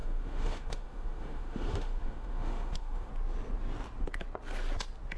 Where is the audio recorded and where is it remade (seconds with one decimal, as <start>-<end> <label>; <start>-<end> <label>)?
0.0-3.1 remade; 3.1-5.2 recorded